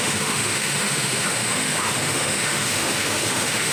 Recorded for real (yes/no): no